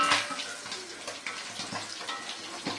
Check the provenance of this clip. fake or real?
real